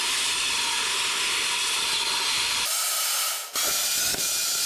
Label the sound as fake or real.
real